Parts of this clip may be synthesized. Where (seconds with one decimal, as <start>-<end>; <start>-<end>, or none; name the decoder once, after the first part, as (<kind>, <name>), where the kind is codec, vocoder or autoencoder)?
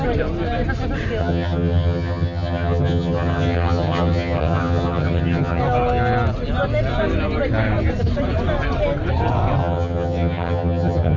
1.2-5.6 (vocoder, HiFi-GAN); 9.6-11.2